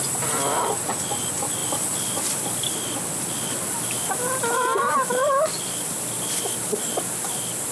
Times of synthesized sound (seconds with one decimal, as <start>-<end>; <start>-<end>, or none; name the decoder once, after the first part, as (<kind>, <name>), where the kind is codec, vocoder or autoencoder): none